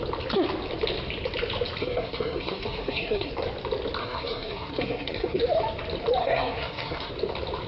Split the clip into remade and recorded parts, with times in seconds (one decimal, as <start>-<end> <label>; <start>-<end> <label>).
0.0-1.8 recorded; 1.8-3.3 remade; 3.3-4.0 recorded; 4.0-5.4 remade; 5.4-6.2 recorded; 6.2-7.1 remade; 7.1-7.7 recorded